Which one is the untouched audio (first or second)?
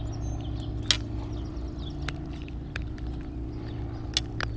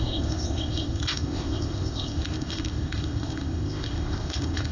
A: first